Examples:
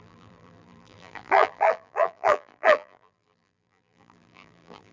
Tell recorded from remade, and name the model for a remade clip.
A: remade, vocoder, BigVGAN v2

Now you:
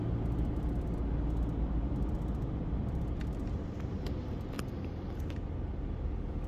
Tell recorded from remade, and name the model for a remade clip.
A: recorded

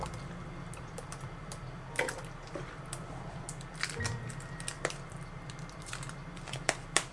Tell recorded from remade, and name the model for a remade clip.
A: remade, vocoder, BigVGAN v2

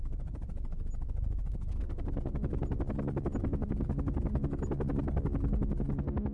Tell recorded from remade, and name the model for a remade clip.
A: recorded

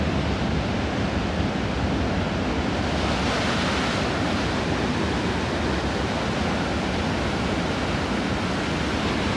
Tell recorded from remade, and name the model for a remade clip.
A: recorded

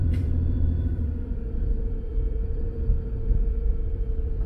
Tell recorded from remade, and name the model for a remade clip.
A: remade, vocoder, BigVGAN v2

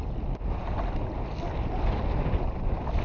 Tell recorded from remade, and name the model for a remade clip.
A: recorded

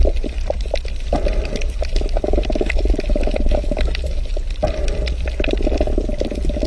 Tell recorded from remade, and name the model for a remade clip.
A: recorded